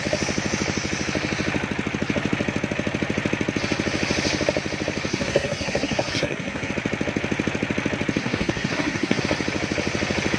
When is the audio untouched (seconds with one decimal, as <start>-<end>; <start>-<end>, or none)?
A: 0.0-5.1; 6.7-8.2; 9.2-10.4